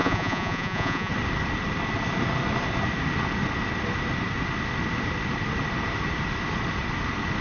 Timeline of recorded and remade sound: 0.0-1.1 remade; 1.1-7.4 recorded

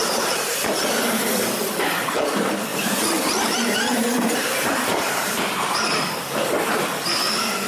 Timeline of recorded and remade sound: 0.0-0.5 remade; 0.5-2.7 recorded; 2.7-5.4 remade; 5.4-7.7 recorded

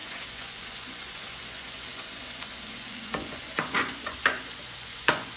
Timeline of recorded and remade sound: 0.0-5.4 remade

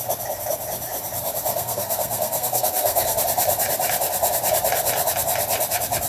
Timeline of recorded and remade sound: 0.0-1.5 recorded; 1.5-3.2 remade; 3.2-6.1 recorded

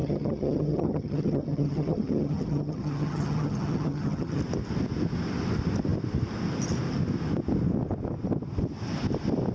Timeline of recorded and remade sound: 0.0-4.4 remade; 4.4-9.5 recorded

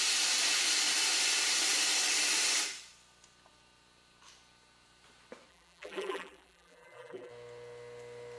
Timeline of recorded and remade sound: 0.0-5.5 recorded; 5.5-7.3 remade; 7.3-8.4 recorded

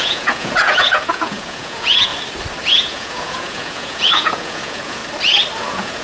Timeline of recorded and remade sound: 0.0-2.1 remade; 2.1-2.7 recorded; 2.7-5.0 remade; 5.0-5.6 recorded; 5.6-6.0 remade